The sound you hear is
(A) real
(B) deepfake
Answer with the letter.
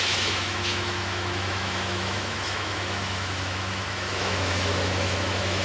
B